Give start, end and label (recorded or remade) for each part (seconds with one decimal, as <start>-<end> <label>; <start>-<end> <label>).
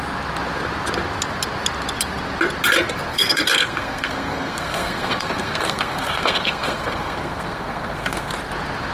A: 0.0-3.1 recorded; 3.1-8.3 remade; 8.3-8.9 recorded